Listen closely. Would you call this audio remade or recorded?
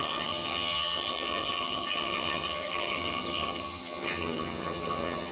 remade